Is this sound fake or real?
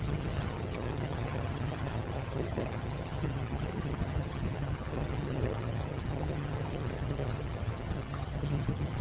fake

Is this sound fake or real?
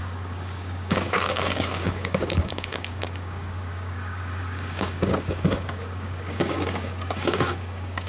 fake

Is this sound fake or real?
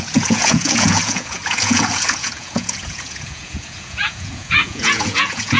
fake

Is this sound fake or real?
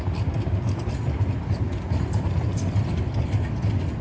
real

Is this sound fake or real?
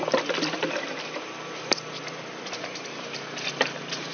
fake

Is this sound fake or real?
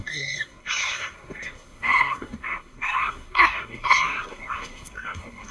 fake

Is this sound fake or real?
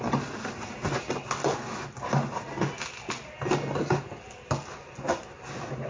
real